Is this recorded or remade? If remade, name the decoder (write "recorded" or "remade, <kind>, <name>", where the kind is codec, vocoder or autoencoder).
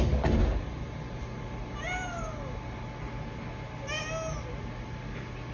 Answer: recorded